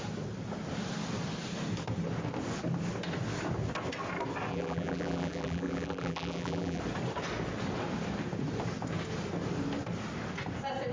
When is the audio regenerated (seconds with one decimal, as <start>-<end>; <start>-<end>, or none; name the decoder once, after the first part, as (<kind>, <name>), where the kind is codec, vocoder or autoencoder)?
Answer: 4.5-6.8 (vocoder, BigVGAN v2)

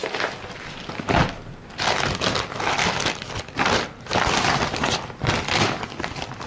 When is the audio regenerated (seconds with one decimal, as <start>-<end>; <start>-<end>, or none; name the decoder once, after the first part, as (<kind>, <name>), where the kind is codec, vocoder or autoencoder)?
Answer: 0.0-0.8 (vocoder, BigVGAN v2)

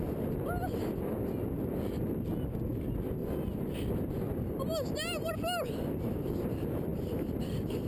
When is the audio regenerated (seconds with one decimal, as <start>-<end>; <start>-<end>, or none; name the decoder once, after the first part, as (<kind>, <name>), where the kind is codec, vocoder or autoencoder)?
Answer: 3.2-4.0 (vocoder, BigVGAN v2)

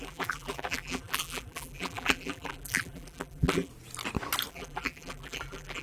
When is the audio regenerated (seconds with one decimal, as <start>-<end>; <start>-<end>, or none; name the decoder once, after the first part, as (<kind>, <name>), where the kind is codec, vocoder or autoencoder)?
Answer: 0.0-3.7 (vocoder, BigVGAN v2); 4.5-5.8

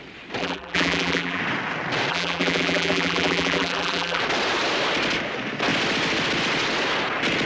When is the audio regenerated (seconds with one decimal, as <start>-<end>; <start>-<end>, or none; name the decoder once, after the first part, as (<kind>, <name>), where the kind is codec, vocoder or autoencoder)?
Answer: 0.4-1.4 (vocoder, BigVGAN v2); 2.1-4.2

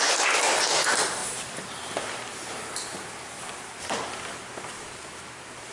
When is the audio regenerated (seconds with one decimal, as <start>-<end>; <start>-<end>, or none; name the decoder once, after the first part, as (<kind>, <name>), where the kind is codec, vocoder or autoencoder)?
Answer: none